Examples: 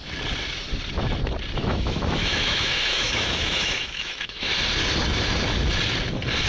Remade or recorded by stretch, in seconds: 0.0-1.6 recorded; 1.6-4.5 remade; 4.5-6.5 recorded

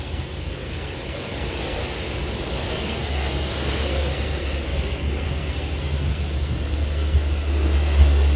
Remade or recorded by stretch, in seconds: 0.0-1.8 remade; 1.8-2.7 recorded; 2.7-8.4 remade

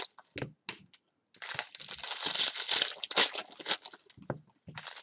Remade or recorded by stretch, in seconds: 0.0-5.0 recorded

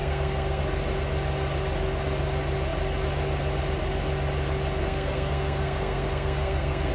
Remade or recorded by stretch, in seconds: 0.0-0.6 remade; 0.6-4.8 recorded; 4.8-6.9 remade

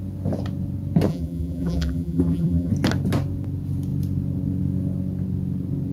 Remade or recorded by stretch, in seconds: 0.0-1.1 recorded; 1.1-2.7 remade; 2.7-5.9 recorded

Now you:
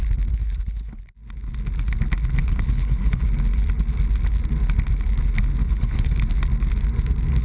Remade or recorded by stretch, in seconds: 0.0-0.4 recorded; 0.4-1.0 remade; 1.0-2.4 recorded; 2.4-3.2 remade; 3.2-5.6 recorded; 5.6-6.2 remade; 6.2-7.4 recorded

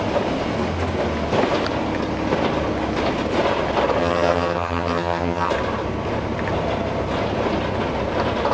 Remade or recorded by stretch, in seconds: 0.0-4.0 recorded; 4.0-5.5 remade; 5.5-8.5 recorded

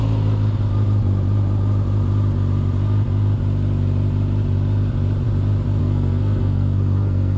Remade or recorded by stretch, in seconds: 0.0-5.8 recorded; 5.8-7.4 remade